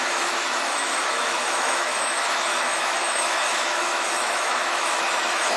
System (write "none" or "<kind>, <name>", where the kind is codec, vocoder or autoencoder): autoencoder, DAC-VAE